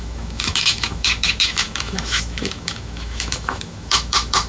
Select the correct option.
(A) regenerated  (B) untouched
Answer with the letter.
A